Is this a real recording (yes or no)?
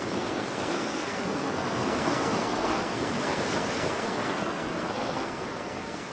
no